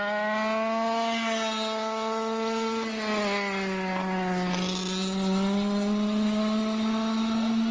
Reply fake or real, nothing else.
real